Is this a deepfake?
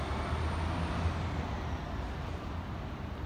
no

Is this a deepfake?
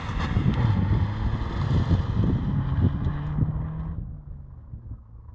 no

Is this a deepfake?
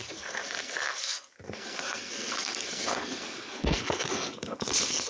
yes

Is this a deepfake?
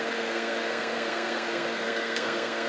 yes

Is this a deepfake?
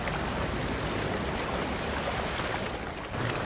no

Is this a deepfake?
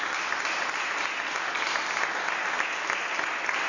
no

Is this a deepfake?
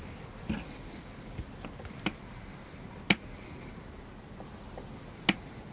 no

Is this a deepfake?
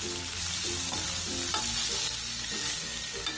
no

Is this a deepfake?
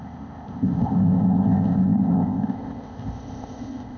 yes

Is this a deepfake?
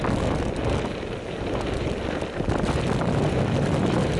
no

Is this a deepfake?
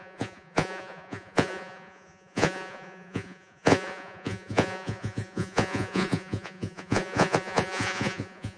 yes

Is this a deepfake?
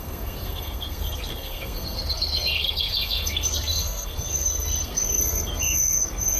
yes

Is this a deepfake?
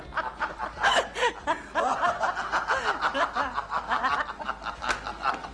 no